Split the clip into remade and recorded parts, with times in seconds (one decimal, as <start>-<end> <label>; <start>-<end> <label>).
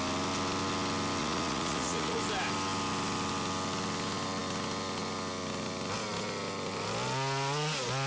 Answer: 0.0-1.2 recorded; 1.2-2.2 remade; 2.2-8.1 recorded